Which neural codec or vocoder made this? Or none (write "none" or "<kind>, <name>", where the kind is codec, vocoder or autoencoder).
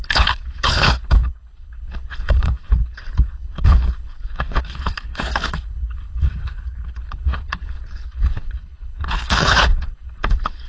codec, HILCodec